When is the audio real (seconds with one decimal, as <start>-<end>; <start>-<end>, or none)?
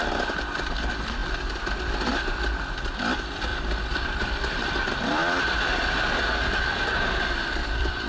0.0-3.5; 6.2-7.6